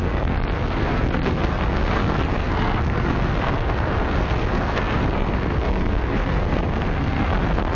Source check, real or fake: fake